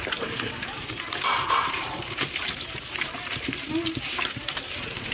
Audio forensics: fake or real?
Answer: fake